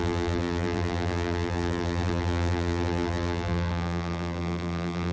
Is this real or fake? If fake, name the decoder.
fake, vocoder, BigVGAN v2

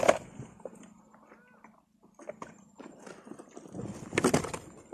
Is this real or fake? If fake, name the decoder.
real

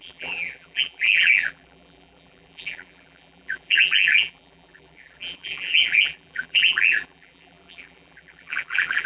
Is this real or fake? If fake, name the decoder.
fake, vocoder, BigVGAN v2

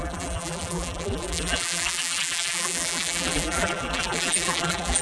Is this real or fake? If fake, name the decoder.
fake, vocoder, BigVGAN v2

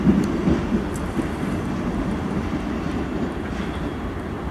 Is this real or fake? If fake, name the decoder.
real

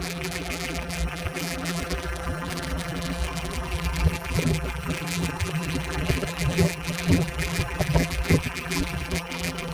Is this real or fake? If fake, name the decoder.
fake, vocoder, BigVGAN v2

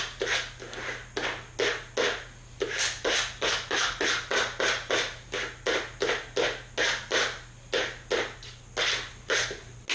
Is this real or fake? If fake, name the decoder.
real